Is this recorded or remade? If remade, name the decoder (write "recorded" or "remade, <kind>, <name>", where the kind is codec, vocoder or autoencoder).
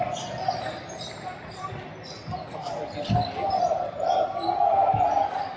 recorded